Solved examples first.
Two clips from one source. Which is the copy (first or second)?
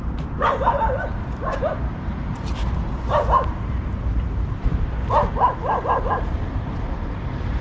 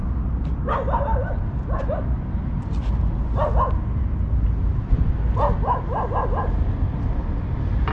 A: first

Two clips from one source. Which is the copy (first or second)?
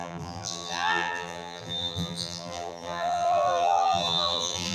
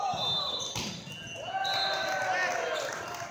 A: first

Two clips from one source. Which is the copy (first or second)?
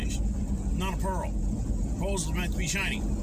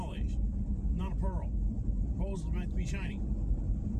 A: second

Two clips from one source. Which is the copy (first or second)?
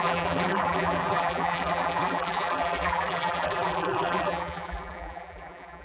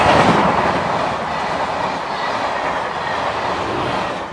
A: first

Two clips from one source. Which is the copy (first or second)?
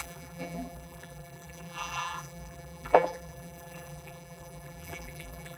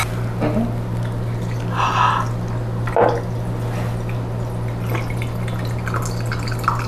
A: first